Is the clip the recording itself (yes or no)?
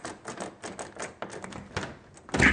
yes